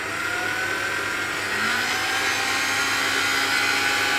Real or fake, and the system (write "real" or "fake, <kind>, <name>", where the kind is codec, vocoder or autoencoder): real